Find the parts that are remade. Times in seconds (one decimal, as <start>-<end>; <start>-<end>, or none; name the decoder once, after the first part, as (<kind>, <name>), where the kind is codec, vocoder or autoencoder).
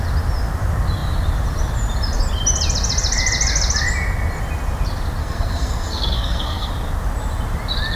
5.2-6.7 (codec, SNAC)